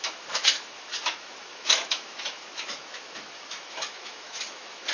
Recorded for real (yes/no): no